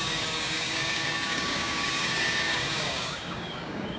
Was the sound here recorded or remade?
remade